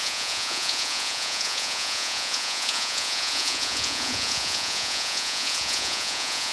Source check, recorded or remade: remade